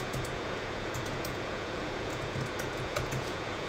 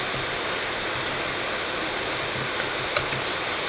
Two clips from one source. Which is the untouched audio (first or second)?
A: second